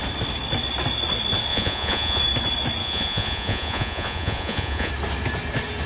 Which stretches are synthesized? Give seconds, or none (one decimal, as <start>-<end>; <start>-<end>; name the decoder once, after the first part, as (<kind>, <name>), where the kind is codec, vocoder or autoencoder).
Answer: 1.5-2.2 (vocoder, Vocos); 2.8-4.9